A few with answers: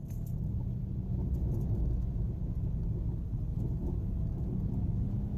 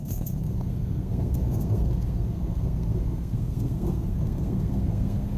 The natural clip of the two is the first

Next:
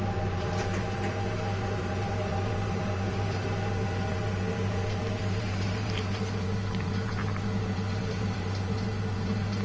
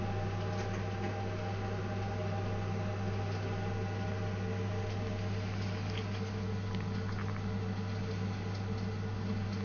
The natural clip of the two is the second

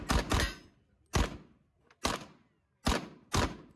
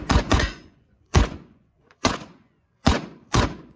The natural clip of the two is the first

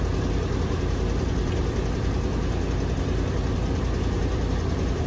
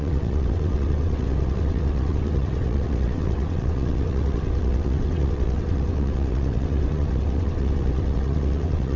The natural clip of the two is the first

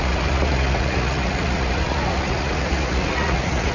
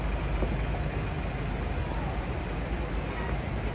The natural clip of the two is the second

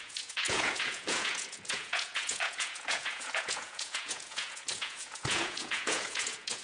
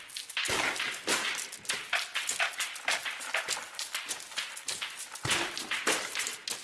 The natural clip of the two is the second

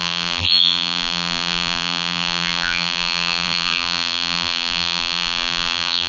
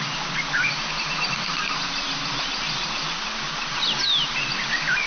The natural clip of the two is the second